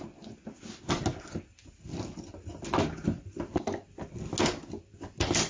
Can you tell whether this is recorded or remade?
recorded